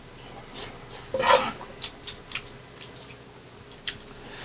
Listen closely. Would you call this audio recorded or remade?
recorded